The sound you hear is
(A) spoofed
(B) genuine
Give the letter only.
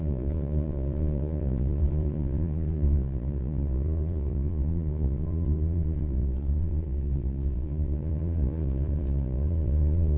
A